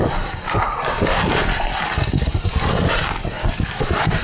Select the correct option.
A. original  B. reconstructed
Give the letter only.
B